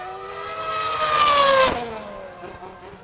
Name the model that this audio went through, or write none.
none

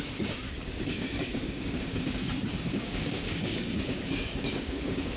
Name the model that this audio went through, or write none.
codec, DAC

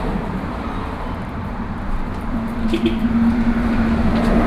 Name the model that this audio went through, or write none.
vocoder, BigVGAN v2